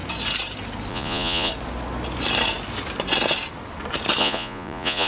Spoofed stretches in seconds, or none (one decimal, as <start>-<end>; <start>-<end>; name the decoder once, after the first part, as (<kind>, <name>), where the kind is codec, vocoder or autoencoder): 0.9-1.5 (vocoder, Vocos); 4.2-5.1